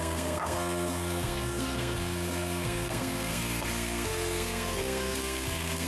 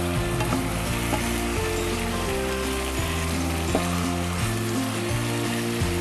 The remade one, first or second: first